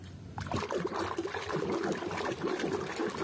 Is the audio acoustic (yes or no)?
yes